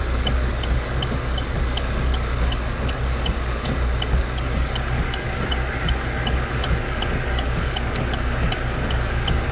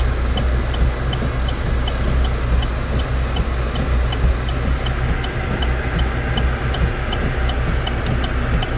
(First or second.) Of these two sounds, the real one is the second